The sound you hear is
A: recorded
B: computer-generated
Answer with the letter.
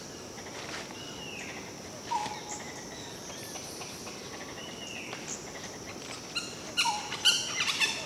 A